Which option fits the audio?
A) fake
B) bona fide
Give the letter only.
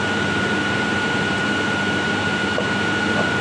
A